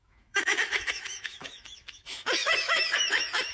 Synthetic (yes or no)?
yes